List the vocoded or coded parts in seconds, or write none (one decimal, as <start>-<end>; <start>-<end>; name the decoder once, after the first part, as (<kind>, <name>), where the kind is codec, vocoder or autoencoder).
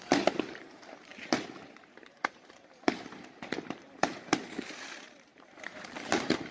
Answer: 0.0-6.5 (vocoder, BigVGAN v2)